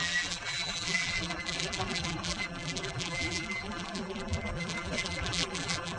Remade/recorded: remade